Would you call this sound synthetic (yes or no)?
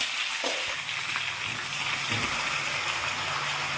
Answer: no